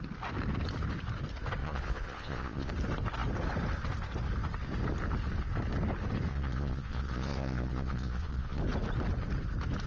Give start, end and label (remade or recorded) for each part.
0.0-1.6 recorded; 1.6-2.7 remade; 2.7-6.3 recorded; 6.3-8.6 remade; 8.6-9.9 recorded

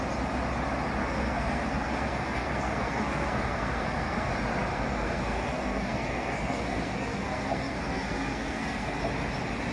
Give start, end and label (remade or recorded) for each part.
0.0-1.0 recorded; 1.0-4.3 remade; 4.3-4.7 recorded; 4.7-9.0 remade; 9.0-9.7 recorded

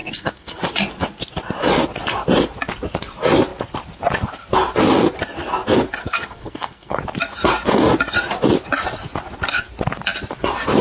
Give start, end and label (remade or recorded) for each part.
0.0-0.6 remade; 0.6-6.0 recorded; 6.0-7.0 remade; 7.0-10.8 recorded

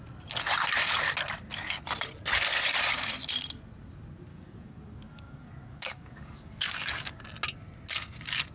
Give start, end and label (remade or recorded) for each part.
0.0-4.3 recorded; 4.3-7.2 remade; 7.2-8.5 recorded

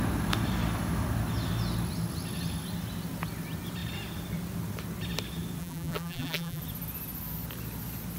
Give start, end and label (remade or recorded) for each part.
0.0-5.6 recorded; 5.6-6.6 remade; 6.6-8.2 recorded

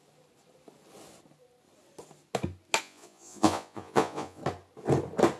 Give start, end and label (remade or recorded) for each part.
0.0-2.8 recorded; 2.8-4.4 remade; 4.4-5.4 recorded

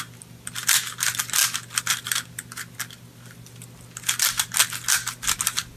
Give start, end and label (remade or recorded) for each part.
0.0-5.8 recorded

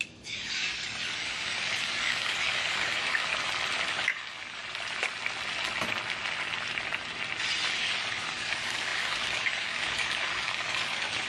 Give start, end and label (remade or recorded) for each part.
0.0-3.3 remade; 3.3-3.9 recorded; 3.9-4.6 remade; 4.6-7.8 recorded; 7.8-11.3 remade